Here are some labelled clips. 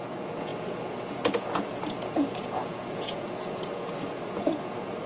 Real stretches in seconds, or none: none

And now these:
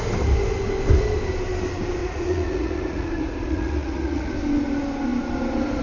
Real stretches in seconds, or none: 0.0-2.0; 4.3-5.8